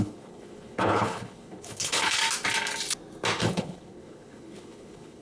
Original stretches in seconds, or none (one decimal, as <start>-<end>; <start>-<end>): 2.2-3.4